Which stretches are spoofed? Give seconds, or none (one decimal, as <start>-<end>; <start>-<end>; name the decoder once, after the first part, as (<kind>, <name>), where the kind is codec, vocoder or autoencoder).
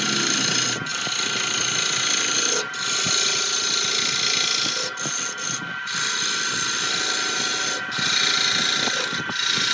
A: none